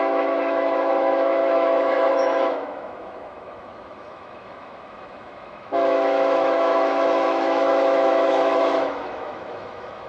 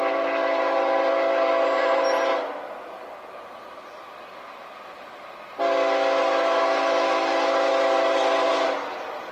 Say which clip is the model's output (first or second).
first